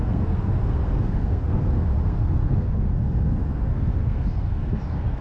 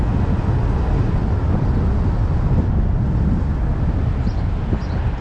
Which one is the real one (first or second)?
second